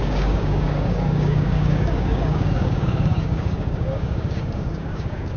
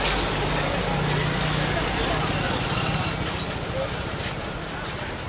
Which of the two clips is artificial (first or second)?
first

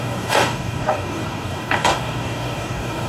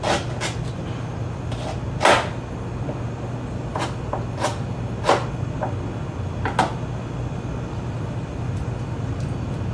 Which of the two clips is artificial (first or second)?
first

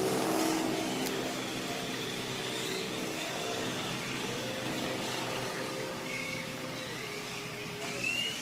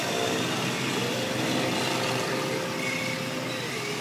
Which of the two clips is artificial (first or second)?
first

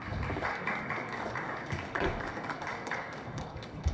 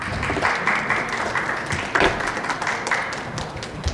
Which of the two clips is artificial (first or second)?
first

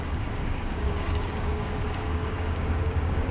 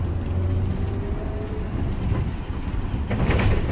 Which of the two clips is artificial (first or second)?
first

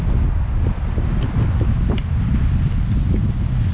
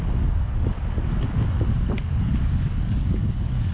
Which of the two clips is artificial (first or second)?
second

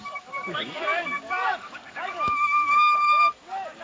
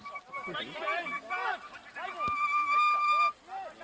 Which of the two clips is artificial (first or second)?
first